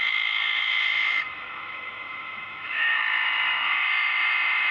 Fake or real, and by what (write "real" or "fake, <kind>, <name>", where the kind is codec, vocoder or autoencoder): fake, autoencoder, DAC-VAE